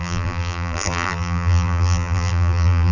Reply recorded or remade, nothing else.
remade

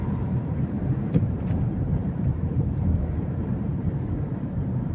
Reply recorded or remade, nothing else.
remade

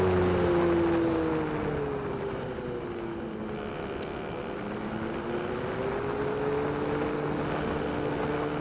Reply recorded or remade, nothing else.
recorded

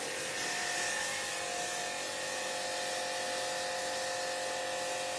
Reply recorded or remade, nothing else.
recorded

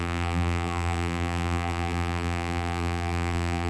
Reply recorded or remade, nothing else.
remade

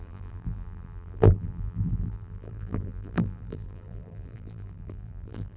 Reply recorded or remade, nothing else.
remade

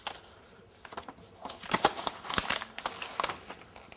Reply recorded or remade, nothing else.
recorded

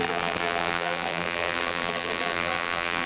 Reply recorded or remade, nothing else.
remade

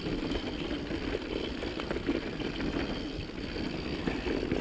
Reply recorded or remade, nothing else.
recorded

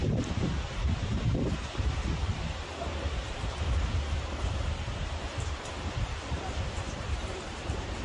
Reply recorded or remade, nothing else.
remade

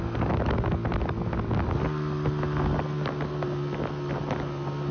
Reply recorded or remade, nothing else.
recorded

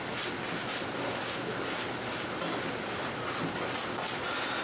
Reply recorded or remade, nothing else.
remade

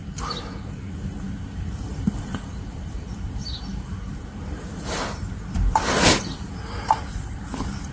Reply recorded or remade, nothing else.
remade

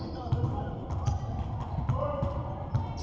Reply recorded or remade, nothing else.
recorded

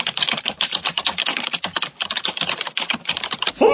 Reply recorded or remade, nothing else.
recorded